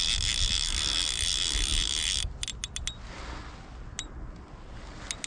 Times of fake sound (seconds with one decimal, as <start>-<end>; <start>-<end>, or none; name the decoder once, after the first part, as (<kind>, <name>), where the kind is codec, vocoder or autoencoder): none